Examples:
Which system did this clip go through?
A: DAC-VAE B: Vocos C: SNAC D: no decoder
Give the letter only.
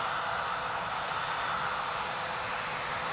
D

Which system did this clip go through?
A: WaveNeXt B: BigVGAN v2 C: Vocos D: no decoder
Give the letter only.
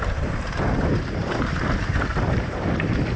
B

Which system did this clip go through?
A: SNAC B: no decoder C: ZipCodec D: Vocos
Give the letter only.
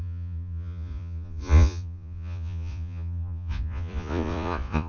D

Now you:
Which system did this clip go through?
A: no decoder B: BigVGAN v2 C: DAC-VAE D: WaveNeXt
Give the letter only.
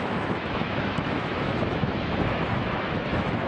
C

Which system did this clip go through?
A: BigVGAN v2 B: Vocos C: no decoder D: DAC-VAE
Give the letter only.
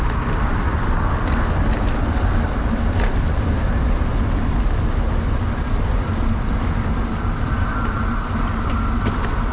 C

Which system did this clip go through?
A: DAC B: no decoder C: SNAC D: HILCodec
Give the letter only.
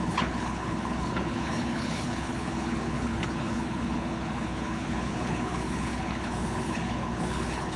D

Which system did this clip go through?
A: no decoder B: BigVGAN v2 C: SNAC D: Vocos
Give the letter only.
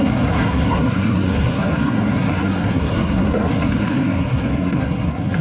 C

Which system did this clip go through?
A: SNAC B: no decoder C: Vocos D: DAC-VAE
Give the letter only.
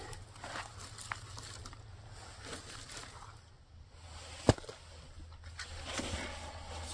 B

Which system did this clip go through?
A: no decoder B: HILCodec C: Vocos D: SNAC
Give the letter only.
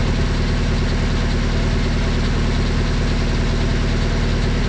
A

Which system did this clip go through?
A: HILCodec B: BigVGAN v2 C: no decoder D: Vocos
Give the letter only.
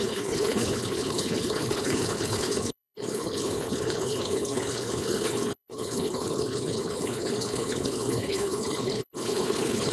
A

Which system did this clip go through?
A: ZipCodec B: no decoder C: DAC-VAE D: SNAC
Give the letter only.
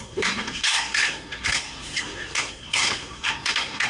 D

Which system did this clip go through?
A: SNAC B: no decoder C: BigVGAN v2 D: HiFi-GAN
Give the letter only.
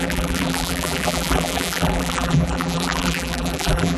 C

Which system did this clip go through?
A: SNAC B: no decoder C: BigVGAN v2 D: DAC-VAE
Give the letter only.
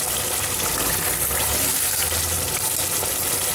B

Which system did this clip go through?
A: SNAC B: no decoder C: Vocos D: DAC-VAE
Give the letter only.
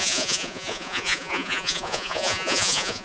C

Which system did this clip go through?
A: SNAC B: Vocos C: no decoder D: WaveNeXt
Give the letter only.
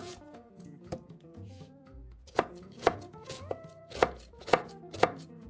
B